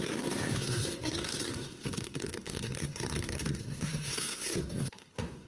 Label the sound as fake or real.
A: fake